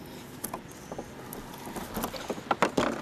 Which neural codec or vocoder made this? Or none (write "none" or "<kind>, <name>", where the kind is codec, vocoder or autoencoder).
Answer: none